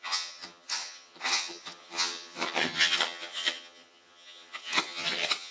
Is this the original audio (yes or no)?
no